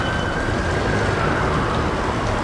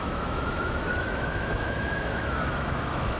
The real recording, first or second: first